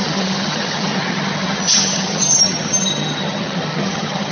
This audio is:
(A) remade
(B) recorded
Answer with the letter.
A